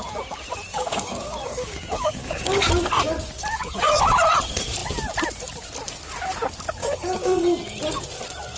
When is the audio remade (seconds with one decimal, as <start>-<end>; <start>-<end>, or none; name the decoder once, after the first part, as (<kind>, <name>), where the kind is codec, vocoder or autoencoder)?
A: 0.7-2.7 (codec, DAC); 3.5-4.0; 6.8-7.4